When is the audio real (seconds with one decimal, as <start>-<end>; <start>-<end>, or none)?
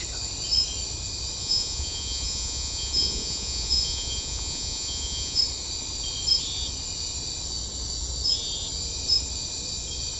0.0-1.4; 5.4-10.2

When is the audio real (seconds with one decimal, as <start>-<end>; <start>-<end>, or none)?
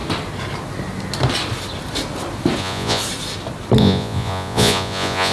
0.0-2.6; 3.0-3.8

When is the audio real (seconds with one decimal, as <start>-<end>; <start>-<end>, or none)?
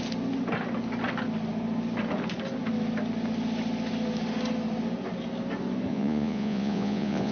0.0-5.9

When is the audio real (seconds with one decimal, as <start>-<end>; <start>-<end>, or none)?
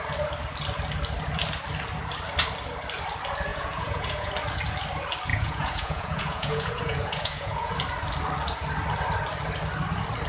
0.0-3.5; 4.3-5.3; 7.7-10.3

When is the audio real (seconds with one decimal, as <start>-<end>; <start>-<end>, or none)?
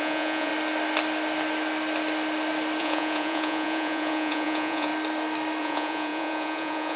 0.5-2.8; 4.9-5.6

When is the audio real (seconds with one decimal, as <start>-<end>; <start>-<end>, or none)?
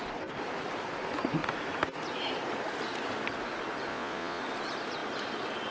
0.0-3.9; 4.4-5.7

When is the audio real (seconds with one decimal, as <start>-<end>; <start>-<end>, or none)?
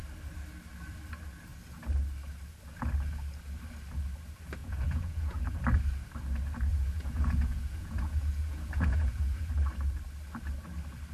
0.0-4.6; 5.6-6.7; 9.5-11.1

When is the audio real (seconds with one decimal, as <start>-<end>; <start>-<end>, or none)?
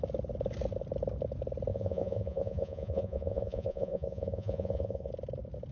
0.0-1.7; 5.1-5.7